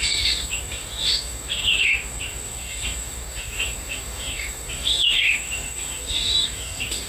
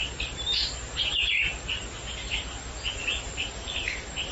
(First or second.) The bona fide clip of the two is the second